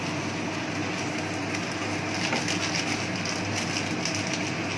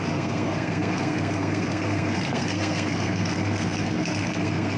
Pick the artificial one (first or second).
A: second